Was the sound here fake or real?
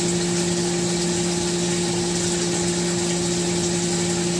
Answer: real